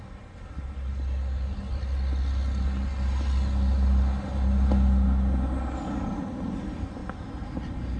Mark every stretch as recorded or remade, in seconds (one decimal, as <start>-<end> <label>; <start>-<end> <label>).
0.0-8.0 recorded